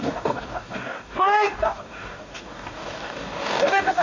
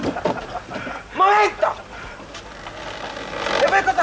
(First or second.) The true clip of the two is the second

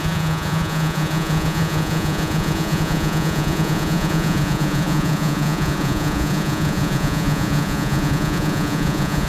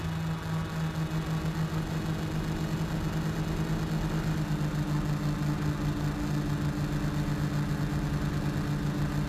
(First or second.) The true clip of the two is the second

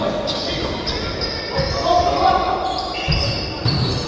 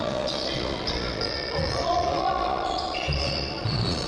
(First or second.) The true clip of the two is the first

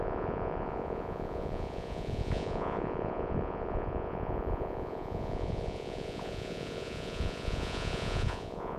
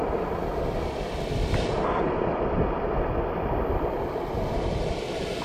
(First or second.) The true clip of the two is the second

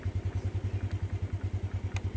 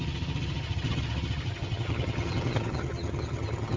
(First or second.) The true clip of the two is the first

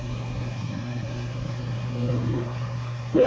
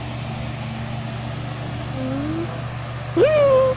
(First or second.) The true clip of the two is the second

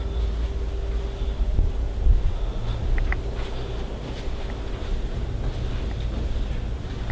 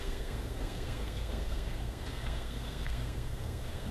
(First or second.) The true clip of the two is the first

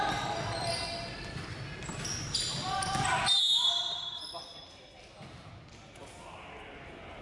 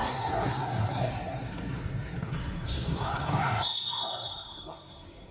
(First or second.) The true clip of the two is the first